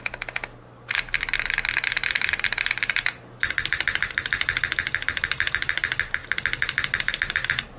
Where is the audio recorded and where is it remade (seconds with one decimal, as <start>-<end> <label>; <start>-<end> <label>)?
0.0-7.8 recorded